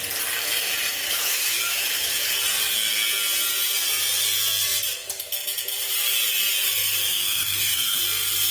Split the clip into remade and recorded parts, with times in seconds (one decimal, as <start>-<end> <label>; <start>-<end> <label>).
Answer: 0.0-1.0 recorded; 1.0-2.3 remade; 2.3-7.1 recorded; 7.1-8.0 remade; 8.0-8.5 recorded